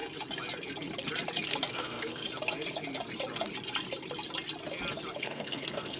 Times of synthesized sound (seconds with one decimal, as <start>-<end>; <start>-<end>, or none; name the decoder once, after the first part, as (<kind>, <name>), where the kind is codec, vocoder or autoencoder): 1.7-2.2 (codec, SNAC); 5.2-6.0